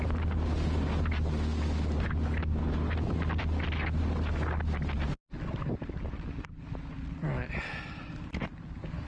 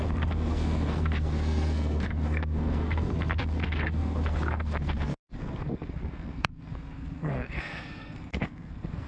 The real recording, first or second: first